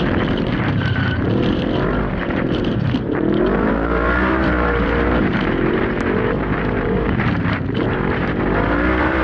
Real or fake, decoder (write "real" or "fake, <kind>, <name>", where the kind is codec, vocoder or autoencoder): fake, vocoder, BigVGAN v2